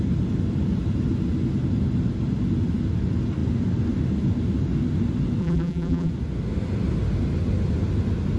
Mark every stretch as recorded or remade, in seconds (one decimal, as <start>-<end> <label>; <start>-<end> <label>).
0.0-5.4 recorded; 5.4-6.1 remade; 6.1-8.4 recorded